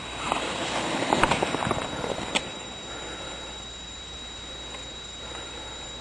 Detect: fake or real fake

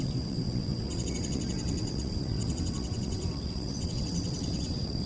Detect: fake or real fake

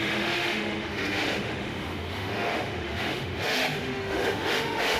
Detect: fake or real fake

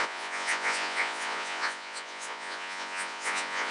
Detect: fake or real fake